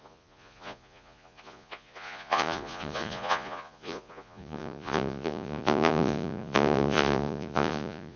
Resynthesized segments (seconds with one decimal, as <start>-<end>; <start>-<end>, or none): 0.0-8.2